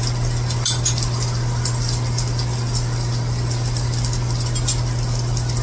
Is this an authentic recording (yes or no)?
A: yes